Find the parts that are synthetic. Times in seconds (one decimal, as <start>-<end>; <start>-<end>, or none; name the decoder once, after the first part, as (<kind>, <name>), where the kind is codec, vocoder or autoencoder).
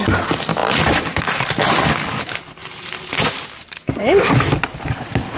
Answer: 0.6-1.2 (vocoder, BigVGAN v2); 2.6-4.6